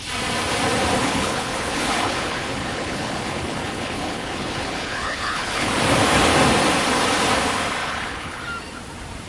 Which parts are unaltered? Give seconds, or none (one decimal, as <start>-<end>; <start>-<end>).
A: 0.0-1.0; 5.7-7.8; 8.4-9.3